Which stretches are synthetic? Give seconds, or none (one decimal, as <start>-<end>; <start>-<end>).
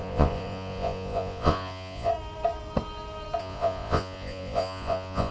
0.0-2.1; 3.4-5.3